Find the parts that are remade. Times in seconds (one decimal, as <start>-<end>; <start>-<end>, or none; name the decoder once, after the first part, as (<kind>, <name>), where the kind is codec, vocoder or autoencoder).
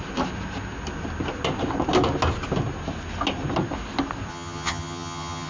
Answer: 4.3-5.5 (vocoder, HiFi-GAN)